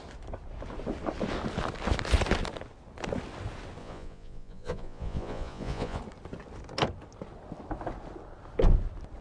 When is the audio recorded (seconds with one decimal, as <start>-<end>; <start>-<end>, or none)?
0.0-3.8; 6.0-9.2